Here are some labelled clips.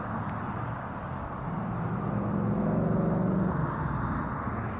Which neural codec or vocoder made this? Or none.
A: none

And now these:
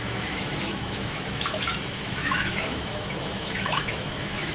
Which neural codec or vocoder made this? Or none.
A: autoencoder, DAC-VAE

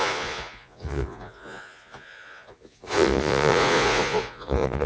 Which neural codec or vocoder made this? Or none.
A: vocoder, Vocos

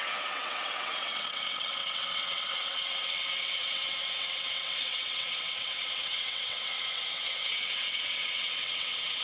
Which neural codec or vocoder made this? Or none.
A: vocoder, WaveNeXt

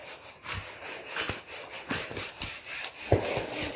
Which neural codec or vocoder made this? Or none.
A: none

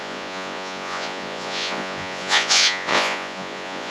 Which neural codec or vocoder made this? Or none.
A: vocoder, Vocos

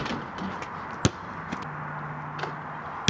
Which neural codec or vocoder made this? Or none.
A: none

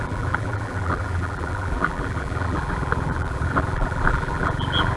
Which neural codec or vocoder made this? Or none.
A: vocoder, BigVGAN v2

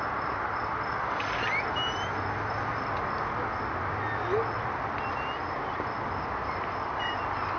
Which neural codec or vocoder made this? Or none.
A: none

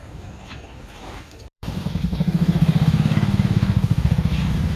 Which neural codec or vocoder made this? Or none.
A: codec, DAC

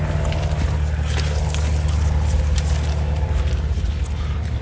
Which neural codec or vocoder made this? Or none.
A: none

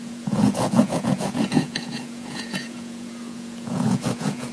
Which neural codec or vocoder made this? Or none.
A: vocoder, Vocos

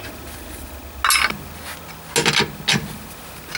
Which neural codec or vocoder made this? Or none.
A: none